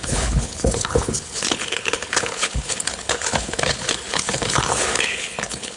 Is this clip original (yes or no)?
no